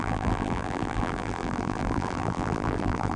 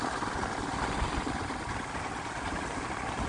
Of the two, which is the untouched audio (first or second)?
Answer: second